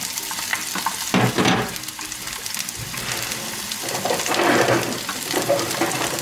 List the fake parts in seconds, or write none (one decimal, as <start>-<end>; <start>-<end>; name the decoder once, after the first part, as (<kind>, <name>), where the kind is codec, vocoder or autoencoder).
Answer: none